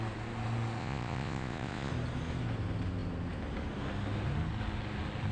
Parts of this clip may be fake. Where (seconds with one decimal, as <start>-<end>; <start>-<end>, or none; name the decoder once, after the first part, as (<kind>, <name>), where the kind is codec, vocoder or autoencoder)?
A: 0.8-1.9 (vocoder, Vocos)